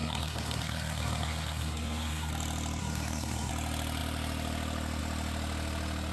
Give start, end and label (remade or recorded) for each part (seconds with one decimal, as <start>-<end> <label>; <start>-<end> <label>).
0.0-2.3 remade; 2.3-2.8 recorded; 2.8-3.5 remade; 3.5-6.1 recorded